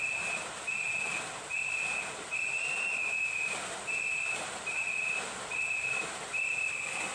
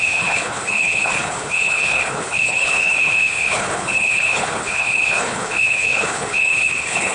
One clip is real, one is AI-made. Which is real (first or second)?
first